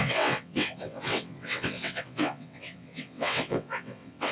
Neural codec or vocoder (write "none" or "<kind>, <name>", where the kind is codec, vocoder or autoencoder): vocoder, WaveNeXt